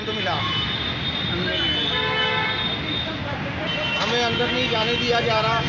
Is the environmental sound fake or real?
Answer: real